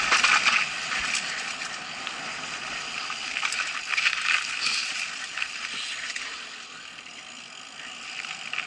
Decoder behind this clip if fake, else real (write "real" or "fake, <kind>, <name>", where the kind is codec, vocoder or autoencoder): real